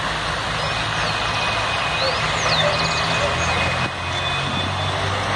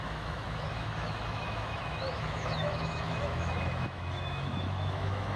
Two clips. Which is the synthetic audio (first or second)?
second